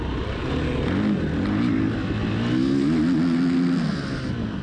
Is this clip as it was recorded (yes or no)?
yes